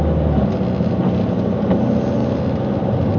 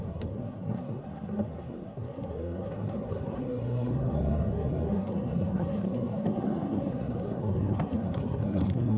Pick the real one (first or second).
first